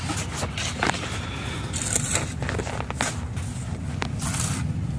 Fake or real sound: real